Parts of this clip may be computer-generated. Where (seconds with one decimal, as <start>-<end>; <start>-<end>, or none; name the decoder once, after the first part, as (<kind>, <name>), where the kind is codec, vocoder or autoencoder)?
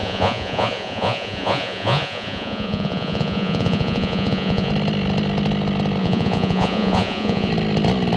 0.0-4.7 (vocoder, Vocos); 6.0-7.5